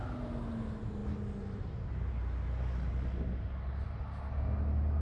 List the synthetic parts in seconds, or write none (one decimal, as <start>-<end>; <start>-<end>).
none